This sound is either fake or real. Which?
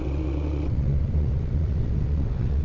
fake